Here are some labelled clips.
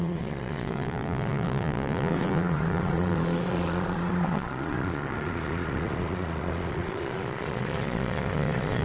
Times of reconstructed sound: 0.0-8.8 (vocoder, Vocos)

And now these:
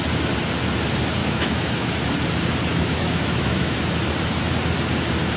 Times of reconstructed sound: 1.2-2.0 (autoencoder, DAC-VAE); 2.7-3.8

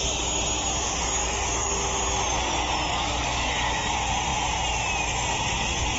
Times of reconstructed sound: 1.2-1.7 (codec, DAC); 2.9-3.9

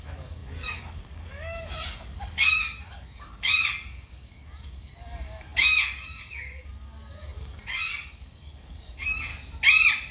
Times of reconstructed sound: 0.0-9.3 (codec, DAC)

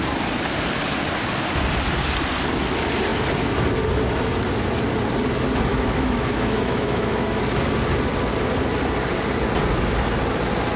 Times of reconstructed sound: 5.7-7.4 (autoencoder, DAC-VAE)